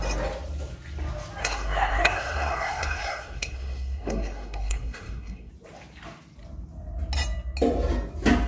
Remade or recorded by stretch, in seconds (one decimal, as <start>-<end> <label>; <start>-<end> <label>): 0.0-1.4 recorded; 1.4-5.5 remade; 5.5-8.5 recorded